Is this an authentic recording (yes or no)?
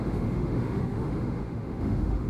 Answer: no